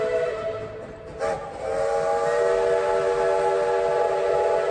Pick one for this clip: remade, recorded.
recorded